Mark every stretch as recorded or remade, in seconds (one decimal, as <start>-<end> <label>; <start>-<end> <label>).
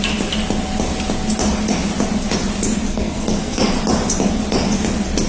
0.0-2.9 recorded; 2.9-3.7 remade; 3.7-5.3 recorded